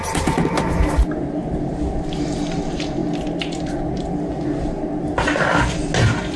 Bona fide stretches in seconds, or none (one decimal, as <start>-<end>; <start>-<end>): 0.0-6.4